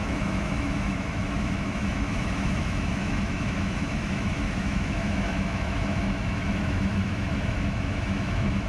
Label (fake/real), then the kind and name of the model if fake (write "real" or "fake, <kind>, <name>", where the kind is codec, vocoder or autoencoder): fake, autoencoder, DAC-VAE